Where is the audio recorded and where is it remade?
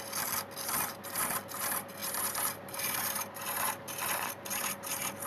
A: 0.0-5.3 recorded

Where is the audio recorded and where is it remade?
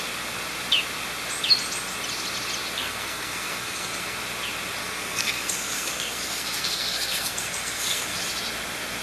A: 0.0-2.8 recorded; 2.8-4.2 remade; 4.2-4.8 recorded; 4.8-8.2 remade; 8.2-9.0 recorded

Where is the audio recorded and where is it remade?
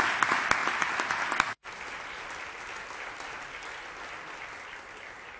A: 0.0-5.4 recorded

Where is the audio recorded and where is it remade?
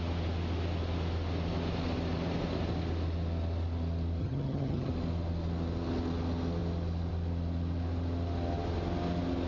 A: 0.0-4.2 recorded; 4.2-4.9 remade; 4.9-9.5 recorded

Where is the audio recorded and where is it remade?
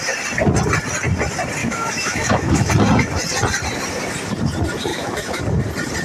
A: 0.0-1.6 recorded; 1.6-2.7 remade; 2.7-4.9 recorded; 4.9-5.4 remade; 5.4-6.0 recorded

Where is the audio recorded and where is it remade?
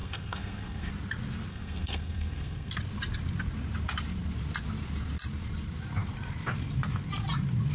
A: 0.0-0.9 remade; 0.9-1.5 recorded; 1.5-2.7 remade; 2.7-7.7 recorded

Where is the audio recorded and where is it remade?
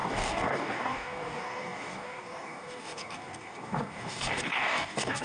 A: 0.0-5.2 remade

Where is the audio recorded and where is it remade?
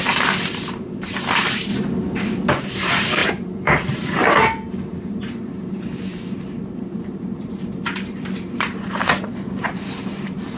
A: 0.0-1.7 remade; 1.7-2.5 recorded; 2.5-10.6 remade